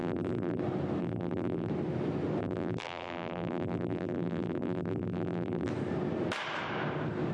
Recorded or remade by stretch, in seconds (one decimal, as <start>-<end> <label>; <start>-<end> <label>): 0.0-0.6 remade; 0.6-1.0 recorded; 1.0-1.7 remade; 1.7-2.4 recorded; 2.4-5.7 remade; 5.7-7.3 recorded